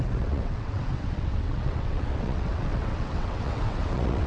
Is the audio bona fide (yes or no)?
no